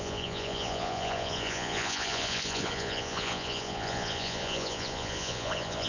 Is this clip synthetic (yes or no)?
yes